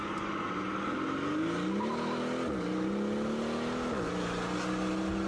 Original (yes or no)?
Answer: yes